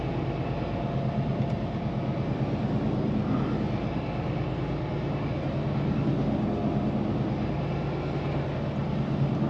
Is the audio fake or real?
real